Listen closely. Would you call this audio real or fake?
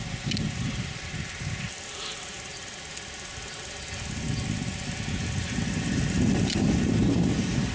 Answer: real